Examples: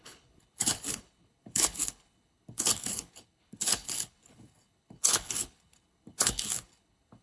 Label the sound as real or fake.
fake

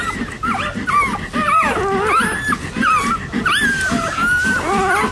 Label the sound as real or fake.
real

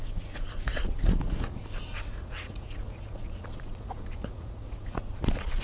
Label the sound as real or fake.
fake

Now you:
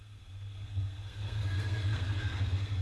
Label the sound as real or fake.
fake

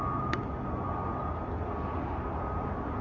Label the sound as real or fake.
real